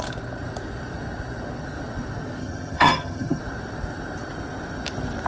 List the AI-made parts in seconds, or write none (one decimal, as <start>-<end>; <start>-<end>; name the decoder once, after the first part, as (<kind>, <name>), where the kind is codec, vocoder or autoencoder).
2.4-3.4 (vocoder, HiFi-GAN)